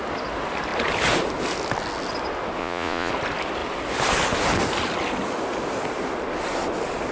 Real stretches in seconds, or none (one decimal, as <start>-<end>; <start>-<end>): 0.0-2.6; 3.1-7.1